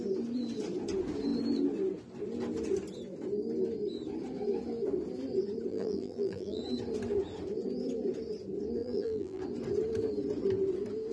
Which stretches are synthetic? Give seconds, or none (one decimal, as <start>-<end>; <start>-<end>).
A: 5.7-6.6; 8.8-9.4